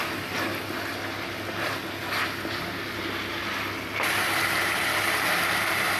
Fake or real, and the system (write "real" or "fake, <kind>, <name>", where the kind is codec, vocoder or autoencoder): real